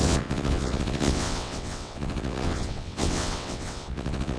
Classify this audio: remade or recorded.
remade